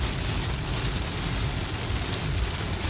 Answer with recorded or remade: recorded